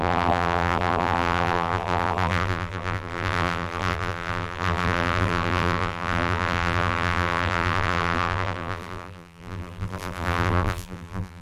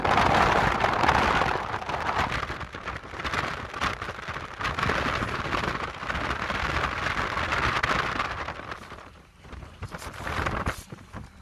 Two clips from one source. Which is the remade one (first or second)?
first